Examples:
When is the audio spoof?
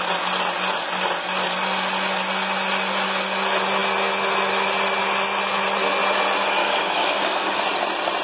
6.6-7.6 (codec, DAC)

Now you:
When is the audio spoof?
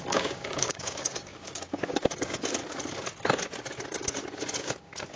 0.0-2.6 (codec, DAC); 4.6-5.2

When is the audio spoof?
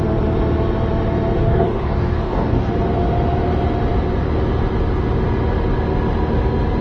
1.4-2.7 (codec, DAC)